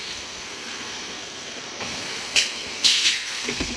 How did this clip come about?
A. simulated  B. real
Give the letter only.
A